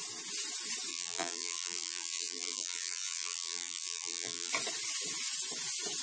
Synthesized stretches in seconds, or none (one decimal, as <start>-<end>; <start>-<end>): 0.9-4.5